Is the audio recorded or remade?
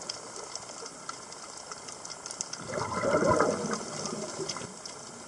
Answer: recorded